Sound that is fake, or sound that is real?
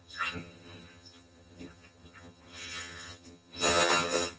fake